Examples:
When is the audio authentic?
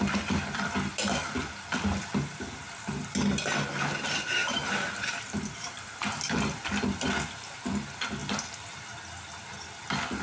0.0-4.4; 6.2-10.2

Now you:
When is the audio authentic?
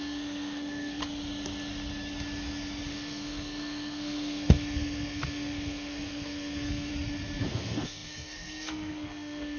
1.0-2.9; 6.9-7.4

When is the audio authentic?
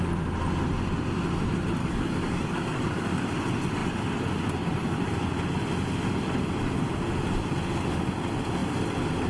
0.0-1.8; 3.2-9.3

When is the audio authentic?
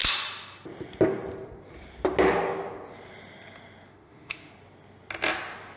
0.0-3.9; 4.5-5.8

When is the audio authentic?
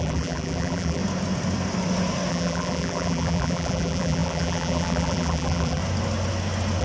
1.0-2.3; 5.8-6.8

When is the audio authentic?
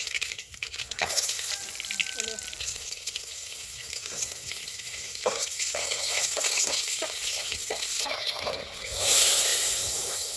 1.5-2.6